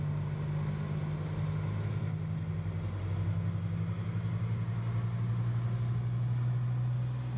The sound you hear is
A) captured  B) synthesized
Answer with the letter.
A